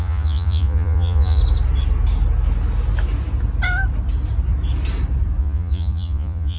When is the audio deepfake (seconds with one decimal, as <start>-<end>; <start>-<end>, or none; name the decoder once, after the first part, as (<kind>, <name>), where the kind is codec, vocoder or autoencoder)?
0.0-1.4 (vocoder, Vocos); 5.4-6.6